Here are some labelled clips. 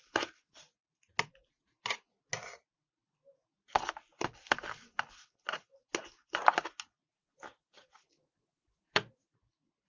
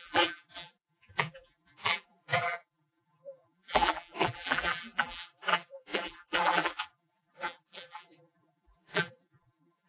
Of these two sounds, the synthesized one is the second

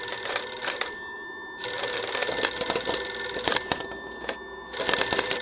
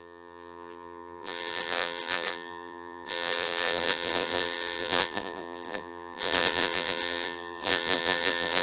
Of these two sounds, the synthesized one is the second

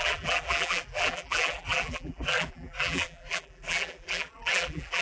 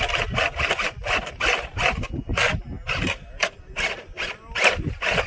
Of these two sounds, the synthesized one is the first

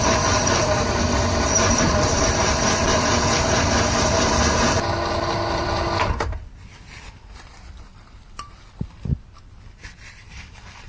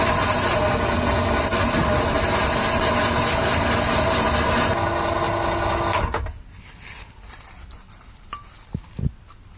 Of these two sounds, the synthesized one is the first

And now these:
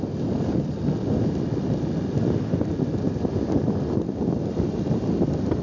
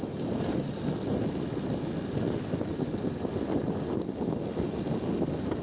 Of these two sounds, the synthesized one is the first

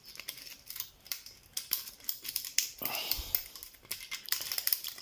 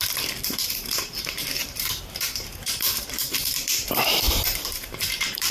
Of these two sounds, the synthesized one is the second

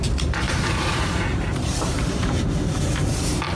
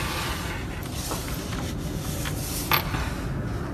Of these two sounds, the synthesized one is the first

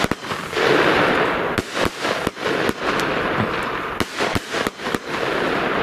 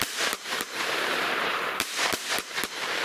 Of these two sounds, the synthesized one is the second